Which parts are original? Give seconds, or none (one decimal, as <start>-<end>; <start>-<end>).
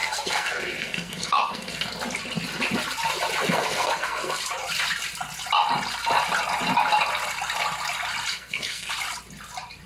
1.9-3.4; 4.4-8.3; 8.9-9.9